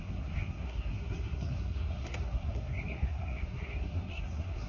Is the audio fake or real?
fake